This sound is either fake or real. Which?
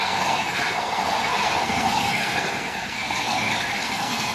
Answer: fake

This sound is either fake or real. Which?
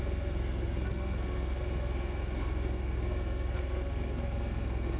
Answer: fake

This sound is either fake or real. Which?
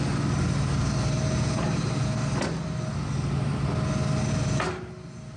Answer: real